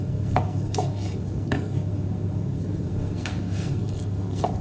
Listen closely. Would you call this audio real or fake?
fake